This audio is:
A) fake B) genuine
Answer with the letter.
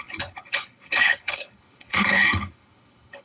A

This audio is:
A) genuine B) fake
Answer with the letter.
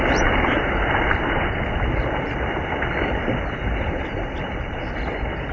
A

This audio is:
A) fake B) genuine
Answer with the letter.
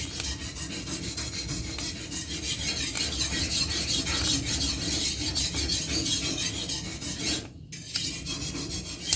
B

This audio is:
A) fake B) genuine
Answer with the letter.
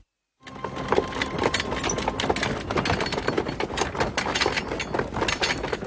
B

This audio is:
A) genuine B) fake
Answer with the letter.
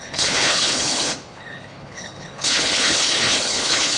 B